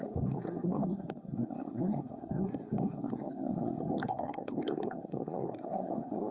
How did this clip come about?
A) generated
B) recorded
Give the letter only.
A